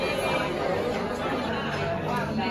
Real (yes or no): yes